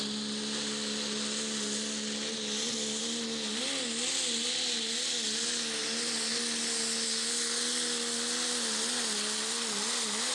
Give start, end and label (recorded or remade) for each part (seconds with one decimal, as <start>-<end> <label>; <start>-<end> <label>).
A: 0.0-10.3 recorded